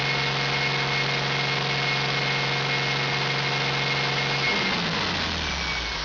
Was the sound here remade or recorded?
recorded